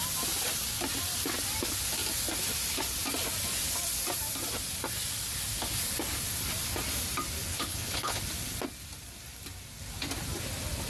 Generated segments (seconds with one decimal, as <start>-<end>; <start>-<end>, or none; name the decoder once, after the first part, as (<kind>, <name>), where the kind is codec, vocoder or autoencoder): 7.5-8.2 (codec, HILCodec)